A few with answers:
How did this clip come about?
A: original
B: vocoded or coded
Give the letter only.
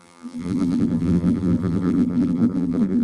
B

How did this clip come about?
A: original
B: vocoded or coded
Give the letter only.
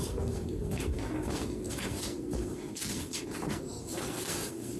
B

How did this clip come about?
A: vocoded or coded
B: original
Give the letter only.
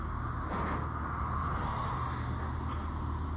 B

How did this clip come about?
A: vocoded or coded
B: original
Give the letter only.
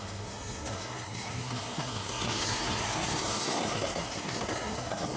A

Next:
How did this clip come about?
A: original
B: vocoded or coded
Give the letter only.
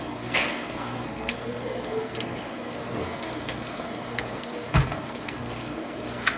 B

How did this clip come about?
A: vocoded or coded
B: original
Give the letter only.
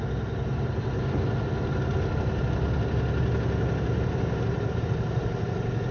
B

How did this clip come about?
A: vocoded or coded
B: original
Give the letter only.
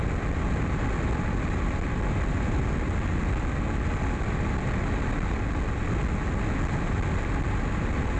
B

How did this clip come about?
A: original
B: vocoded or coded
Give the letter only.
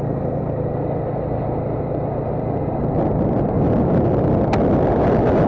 A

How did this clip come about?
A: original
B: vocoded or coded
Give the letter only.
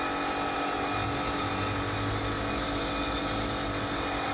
A